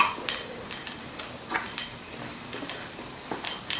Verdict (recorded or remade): remade